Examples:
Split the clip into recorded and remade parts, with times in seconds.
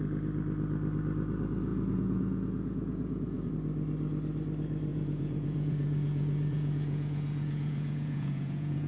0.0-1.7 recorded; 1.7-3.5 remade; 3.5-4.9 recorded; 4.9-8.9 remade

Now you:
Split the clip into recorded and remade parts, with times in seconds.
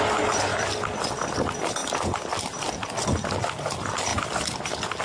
0.0-5.0 recorded